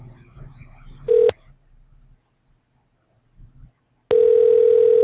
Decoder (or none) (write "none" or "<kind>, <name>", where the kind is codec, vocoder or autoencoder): none